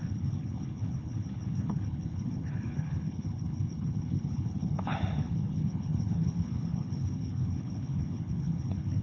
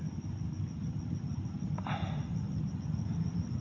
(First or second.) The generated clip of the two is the first